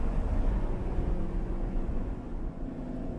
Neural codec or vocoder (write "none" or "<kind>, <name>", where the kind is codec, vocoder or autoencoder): vocoder, Vocos